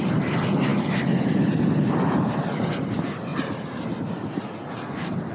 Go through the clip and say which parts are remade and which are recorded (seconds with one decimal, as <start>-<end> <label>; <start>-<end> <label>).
0.0-5.3 recorded